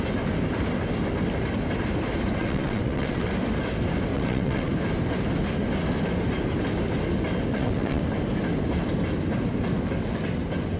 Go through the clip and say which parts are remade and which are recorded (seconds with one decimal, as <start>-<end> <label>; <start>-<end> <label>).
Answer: 0.0-2.4 recorded; 2.4-3.3 remade; 3.3-4.1 recorded; 4.1-4.7 remade; 4.7-7.5 recorded; 7.5-8.0 remade; 8.0-10.8 recorded